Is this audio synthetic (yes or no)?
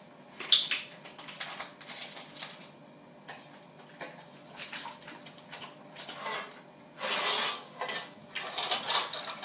no